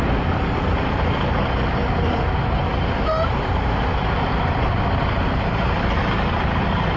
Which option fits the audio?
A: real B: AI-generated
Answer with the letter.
A